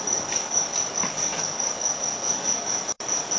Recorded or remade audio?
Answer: remade